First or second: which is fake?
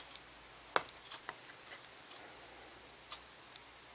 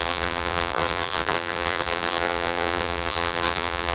second